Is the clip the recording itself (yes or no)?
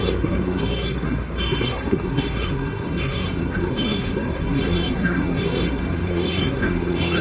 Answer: no